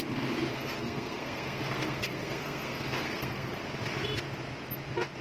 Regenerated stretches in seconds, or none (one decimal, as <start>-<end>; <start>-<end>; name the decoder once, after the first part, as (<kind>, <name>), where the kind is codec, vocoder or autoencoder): 0.5-3.6 (codec, SNAC)